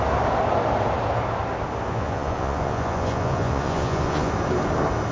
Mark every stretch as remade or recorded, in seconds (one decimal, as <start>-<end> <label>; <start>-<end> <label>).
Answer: 0.0-1.9 recorded; 1.9-4.3 remade; 4.3-5.1 recorded